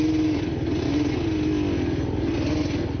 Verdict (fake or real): real